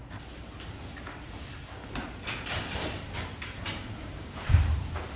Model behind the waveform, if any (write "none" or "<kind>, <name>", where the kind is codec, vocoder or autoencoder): vocoder, BigVGAN v2